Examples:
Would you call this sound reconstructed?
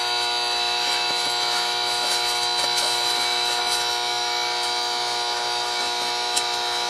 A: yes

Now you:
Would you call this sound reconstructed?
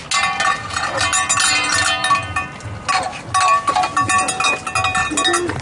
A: no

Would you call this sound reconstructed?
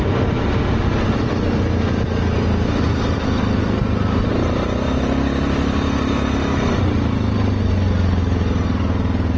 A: no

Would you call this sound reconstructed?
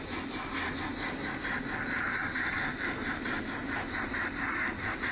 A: no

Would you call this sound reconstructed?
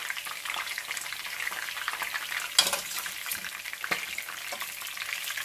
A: no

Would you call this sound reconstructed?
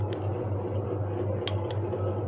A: no